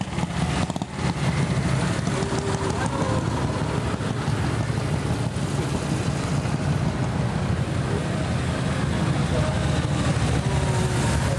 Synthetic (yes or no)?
no